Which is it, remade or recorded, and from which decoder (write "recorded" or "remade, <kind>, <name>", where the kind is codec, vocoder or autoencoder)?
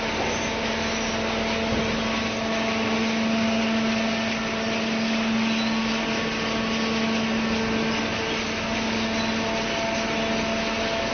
recorded